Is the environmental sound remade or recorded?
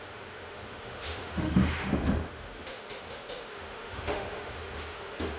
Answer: remade